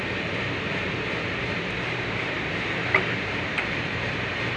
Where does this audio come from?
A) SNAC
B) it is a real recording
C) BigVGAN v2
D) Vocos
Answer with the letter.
C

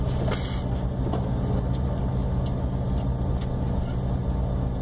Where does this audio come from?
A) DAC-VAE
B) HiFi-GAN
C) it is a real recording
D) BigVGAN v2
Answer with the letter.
C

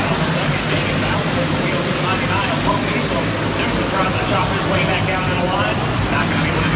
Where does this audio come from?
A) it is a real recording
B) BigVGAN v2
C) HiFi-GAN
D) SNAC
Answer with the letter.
A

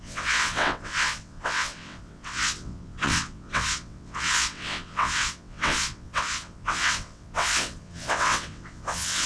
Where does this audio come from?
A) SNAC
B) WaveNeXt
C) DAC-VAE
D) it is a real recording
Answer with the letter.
B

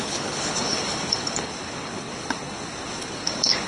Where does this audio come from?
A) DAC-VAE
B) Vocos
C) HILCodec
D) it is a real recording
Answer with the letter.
C